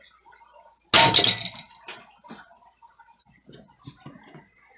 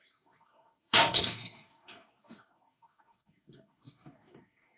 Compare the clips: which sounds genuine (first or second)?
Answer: first